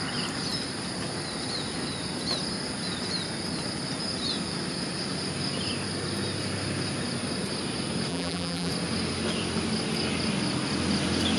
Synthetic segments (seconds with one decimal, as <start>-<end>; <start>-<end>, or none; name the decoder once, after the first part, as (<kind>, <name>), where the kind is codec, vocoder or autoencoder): 8.1-8.7 (vocoder, BigVGAN v2)